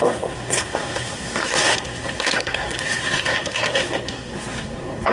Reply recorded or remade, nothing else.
remade